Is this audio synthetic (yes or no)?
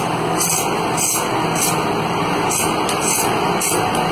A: no